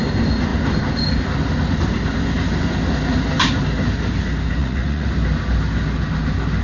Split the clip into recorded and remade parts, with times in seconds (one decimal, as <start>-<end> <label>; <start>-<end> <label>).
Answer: 0.0-4.6 recorded; 4.6-5.1 remade; 5.1-6.6 recorded